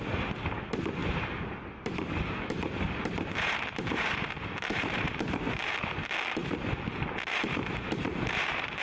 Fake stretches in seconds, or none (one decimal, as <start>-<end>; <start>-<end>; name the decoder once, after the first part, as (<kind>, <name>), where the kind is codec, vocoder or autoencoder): 1.0-5.7 (vocoder, BigVGAN v2); 6.4-8.8